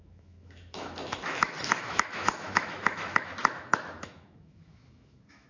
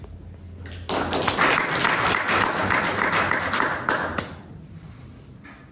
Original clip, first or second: second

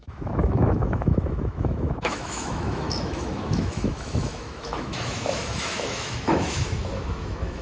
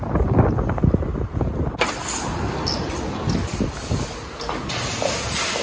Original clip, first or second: second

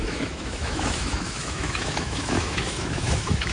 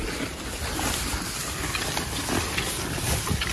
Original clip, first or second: second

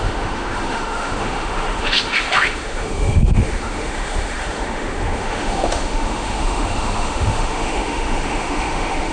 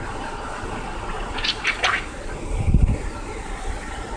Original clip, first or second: second